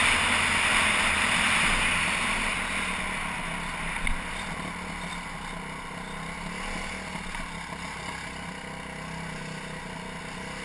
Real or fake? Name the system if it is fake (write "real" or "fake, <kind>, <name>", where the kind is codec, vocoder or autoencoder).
real